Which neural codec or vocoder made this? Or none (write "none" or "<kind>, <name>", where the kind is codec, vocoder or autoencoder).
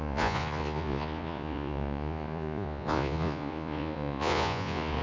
vocoder, Vocos